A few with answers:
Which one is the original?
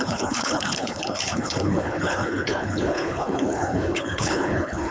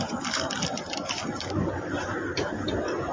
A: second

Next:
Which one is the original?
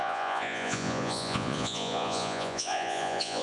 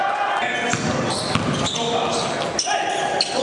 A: second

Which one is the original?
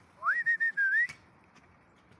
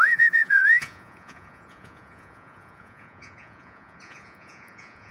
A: first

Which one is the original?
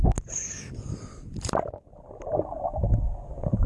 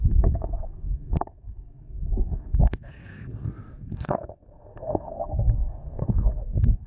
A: first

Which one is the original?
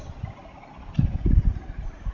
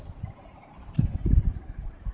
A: first